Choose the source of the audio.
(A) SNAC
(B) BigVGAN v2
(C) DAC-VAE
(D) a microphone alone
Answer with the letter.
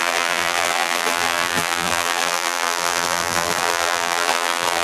B